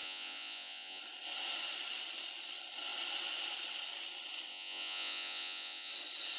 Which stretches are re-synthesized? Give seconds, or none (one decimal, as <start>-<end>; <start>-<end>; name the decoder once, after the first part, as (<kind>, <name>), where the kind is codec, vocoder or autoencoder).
0.0-1.0 (vocoder, Vocos); 4.5-5.9